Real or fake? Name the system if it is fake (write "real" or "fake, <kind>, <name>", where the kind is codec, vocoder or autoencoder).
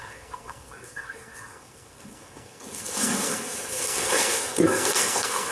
fake, codec, SNAC